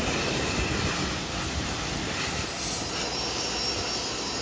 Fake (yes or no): no